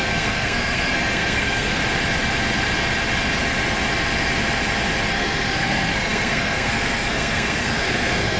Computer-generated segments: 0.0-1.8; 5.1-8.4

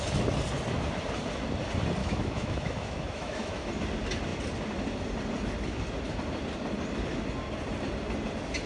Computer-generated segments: 2.0-3.7

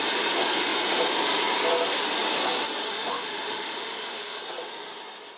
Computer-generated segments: 2.8-4.4